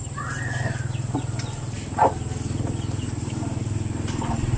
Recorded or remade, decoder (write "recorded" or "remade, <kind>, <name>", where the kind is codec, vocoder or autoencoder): recorded